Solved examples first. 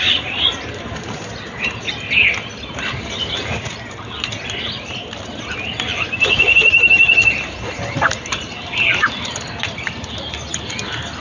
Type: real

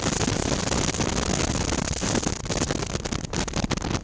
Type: real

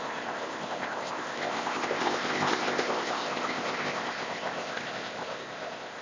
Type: fake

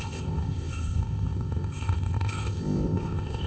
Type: fake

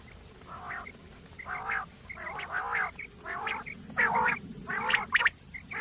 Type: real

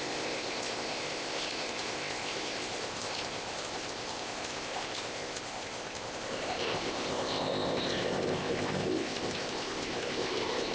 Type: fake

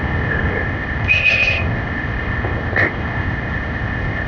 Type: fake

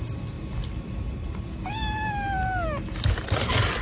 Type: real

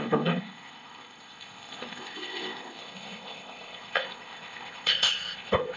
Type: fake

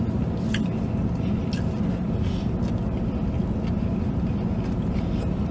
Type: real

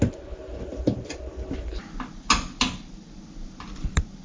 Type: real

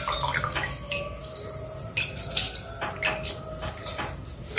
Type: real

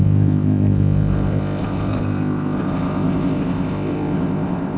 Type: fake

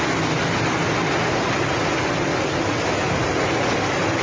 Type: real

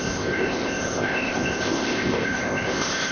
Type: fake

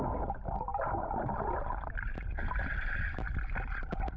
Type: real